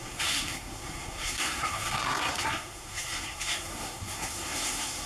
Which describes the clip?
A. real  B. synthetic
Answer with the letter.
B